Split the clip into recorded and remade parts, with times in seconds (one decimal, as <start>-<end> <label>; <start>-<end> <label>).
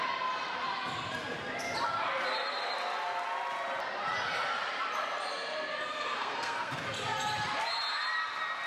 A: 0.0-5.9 recorded; 5.9-6.8 remade; 6.8-8.7 recorded